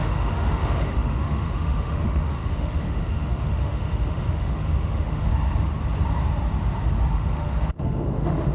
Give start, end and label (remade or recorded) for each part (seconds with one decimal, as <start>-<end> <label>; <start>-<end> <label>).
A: 0.0-5.3 remade; 5.3-7.1 recorded; 7.1-8.5 remade